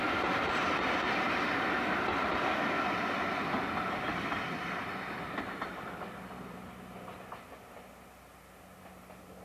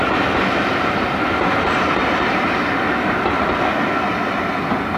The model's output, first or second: first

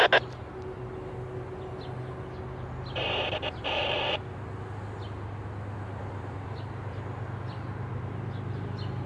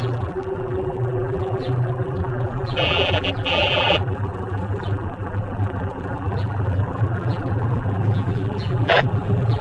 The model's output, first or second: second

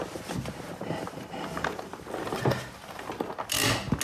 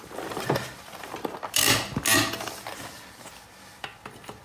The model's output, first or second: second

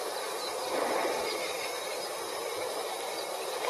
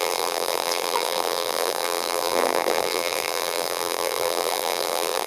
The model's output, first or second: second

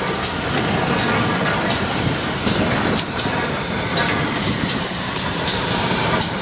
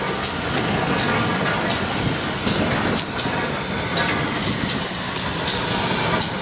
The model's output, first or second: first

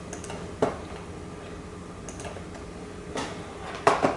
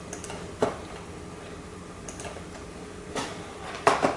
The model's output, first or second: second